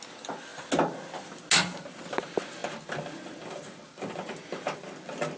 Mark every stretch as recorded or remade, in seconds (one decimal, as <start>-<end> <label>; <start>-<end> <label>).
0.0-5.4 recorded